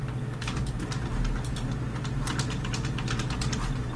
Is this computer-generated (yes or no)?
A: no